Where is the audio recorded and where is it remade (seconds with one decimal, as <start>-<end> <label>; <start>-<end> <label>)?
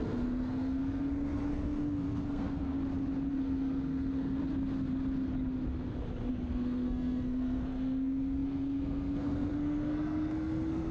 0.0-2.7 remade; 2.7-3.3 recorded; 3.3-4.4 remade; 4.4-6.3 recorded; 6.3-10.9 remade